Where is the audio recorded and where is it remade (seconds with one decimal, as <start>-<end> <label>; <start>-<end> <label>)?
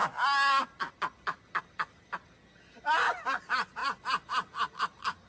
0.0-1.6 recorded; 1.6-3.8 remade; 3.8-4.7 recorded; 4.7-5.3 remade